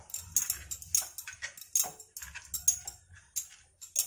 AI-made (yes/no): no